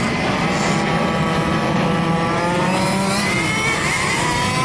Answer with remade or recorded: recorded